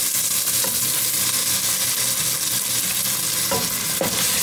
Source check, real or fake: real